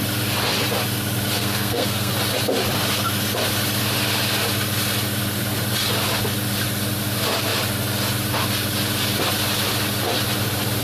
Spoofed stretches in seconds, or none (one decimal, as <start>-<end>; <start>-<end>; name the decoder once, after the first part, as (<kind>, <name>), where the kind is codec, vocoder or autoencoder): 1.4-2.1 (codec, SNAC)